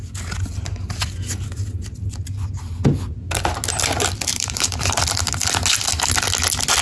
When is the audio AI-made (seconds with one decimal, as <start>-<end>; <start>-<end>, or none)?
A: 4.3-5.0